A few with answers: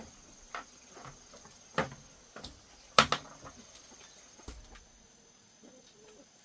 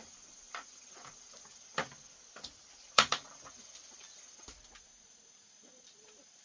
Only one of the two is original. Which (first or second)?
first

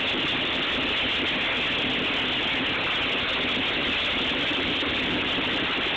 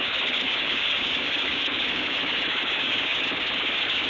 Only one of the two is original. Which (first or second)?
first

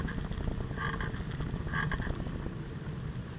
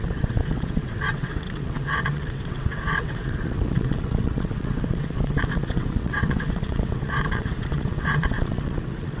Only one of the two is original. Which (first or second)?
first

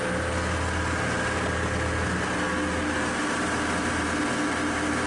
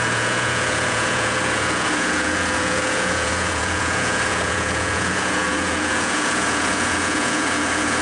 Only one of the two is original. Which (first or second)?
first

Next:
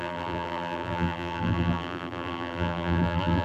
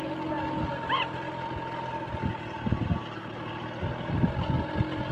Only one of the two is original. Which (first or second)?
second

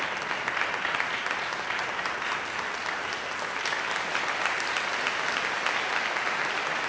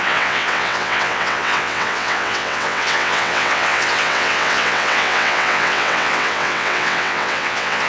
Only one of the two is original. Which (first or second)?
first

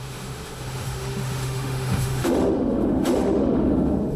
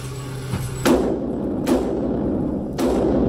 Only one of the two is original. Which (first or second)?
second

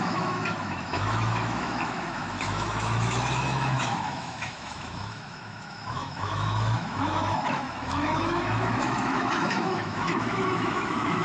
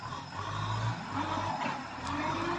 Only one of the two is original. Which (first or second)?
second